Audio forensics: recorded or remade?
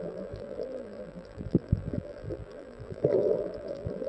remade